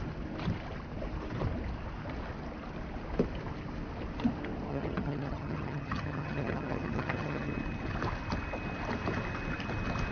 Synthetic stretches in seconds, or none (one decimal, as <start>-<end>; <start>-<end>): 4.7-7.5

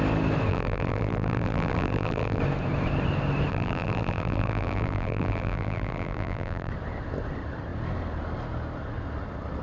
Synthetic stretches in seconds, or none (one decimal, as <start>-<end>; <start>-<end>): 0.5-2.4; 3.5-6.7

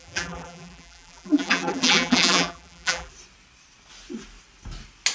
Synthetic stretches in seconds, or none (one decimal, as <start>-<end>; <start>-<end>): 0.0-3.1

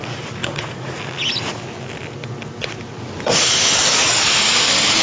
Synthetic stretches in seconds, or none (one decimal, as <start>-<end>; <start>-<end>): 0.4-1.0